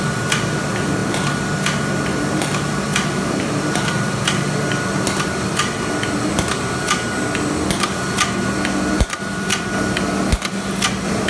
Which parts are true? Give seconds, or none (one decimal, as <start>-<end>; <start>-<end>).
0.0-11.3

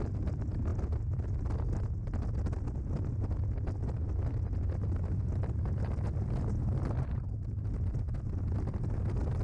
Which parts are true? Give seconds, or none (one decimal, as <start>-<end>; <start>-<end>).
0.0-9.4

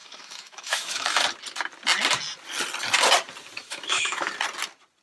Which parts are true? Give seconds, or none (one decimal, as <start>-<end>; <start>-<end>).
1.2-3.6; 4.3-5.0

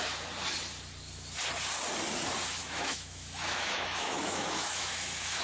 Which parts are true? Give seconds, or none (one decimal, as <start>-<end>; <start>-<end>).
0.0-2.6